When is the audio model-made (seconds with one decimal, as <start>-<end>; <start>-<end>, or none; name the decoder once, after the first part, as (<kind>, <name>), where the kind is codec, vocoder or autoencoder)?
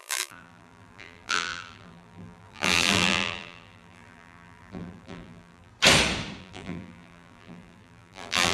0.0-5.7 (vocoder, BigVGAN v2); 6.4-8.5